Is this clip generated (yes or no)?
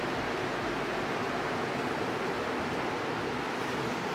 no